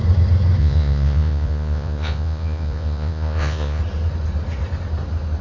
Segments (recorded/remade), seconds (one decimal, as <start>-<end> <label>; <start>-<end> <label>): 0.0-0.6 recorded; 0.6-3.8 remade; 3.8-5.4 recorded